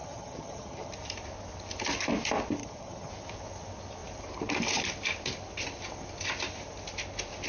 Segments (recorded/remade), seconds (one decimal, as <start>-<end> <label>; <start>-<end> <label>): 0.0-0.9 remade; 0.9-2.6 recorded; 2.6-3.1 remade; 3.1-7.5 recorded